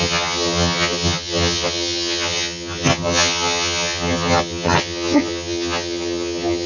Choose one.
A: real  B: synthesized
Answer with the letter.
B